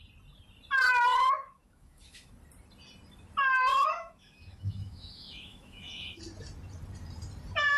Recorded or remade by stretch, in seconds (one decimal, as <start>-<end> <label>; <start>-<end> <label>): 0.0-1.1 recorded; 1.1-2.3 remade; 2.3-3.7 recorded; 3.7-6.2 remade; 6.2-7.8 recorded